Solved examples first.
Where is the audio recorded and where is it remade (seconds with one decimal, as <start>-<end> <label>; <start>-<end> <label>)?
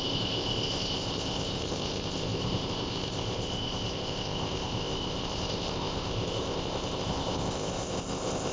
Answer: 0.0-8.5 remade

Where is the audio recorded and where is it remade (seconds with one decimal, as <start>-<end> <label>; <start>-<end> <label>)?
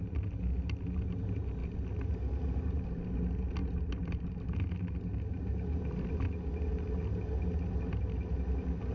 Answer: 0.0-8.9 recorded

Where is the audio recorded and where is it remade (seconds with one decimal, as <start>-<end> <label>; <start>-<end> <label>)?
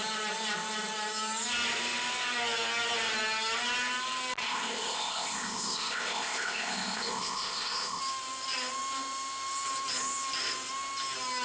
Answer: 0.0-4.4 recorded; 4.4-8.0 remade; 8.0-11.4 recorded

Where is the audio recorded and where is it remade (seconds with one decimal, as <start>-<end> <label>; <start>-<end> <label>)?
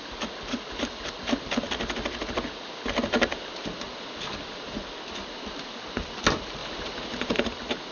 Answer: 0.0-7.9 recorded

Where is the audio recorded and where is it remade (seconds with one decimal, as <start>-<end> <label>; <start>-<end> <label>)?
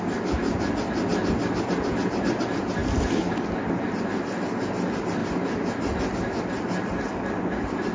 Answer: 0.0-7.9 recorded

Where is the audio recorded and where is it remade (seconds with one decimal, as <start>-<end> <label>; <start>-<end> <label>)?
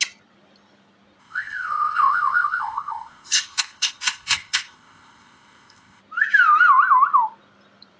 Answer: 0.0-1.2 recorded; 1.2-6.0 remade; 6.0-8.0 recorded